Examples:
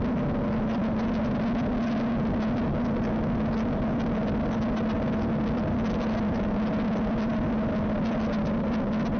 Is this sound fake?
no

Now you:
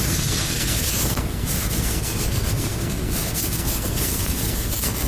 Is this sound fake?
yes